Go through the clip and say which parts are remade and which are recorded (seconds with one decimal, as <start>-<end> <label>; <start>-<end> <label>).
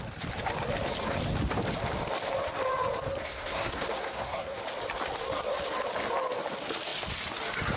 0.0-3.2 recorded; 3.2-4.6 remade; 4.6-7.8 recorded